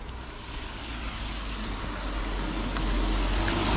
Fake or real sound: real